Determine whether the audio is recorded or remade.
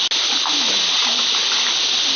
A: recorded